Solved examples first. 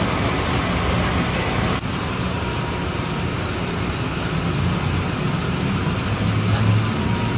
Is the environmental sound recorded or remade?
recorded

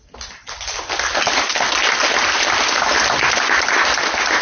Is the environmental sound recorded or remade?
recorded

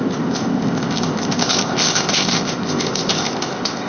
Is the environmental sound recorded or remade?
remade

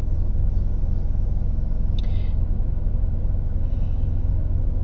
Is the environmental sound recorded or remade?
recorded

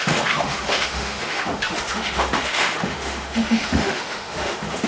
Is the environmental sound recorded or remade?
remade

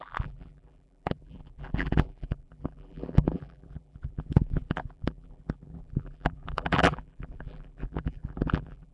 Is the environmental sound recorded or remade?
remade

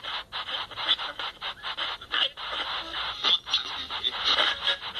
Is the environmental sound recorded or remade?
recorded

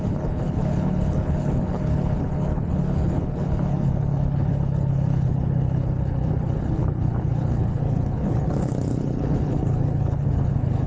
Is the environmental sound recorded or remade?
remade